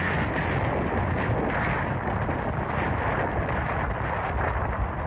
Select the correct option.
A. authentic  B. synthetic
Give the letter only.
A